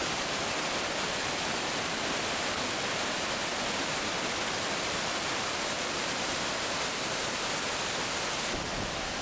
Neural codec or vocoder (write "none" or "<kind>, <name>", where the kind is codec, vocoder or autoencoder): none